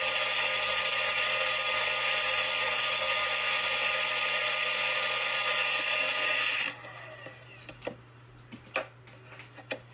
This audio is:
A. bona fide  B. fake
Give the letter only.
A